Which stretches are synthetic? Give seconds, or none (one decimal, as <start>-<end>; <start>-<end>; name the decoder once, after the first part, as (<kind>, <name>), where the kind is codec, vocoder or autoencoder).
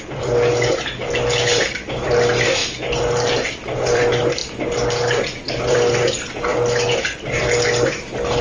0.0-2.6 (vocoder, BigVGAN v2); 3.3-4.4; 5.6-6.5; 7.4-8.4